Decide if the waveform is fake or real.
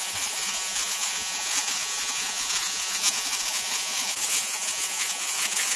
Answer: fake